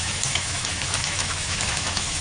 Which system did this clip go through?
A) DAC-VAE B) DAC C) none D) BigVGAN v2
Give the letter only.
A